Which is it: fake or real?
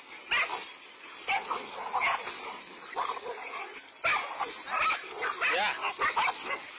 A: real